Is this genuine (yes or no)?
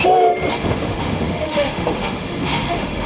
no